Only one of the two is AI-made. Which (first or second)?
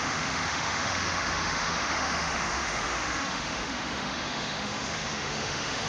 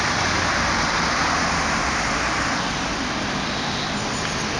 first